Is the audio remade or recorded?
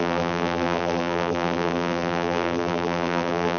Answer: remade